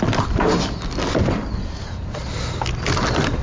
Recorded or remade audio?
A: recorded